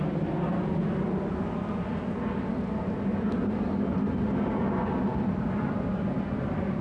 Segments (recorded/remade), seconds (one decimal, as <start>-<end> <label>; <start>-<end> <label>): 0.0-6.8 recorded